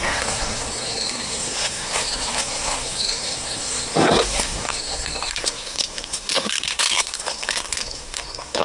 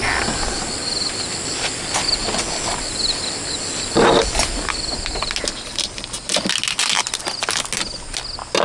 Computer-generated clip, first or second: first